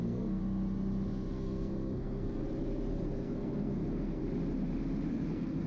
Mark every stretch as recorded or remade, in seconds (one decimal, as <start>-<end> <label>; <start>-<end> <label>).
0.0-0.4 remade; 0.4-1.3 recorded; 1.3-2.4 remade; 2.4-2.9 recorded; 2.9-4.2 remade; 4.2-5.1 recorded; 5.1-5.7 remade